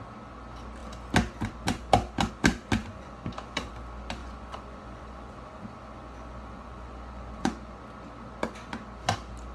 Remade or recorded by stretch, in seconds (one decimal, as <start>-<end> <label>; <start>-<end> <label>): 0.0-2.8 recorded; 2.8-3.7 remade; 3.7-4.2 recorded; 4.2-7.8 remade; 7.8-9.5 recorded